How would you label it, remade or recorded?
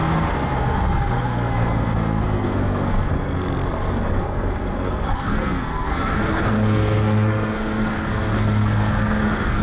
remade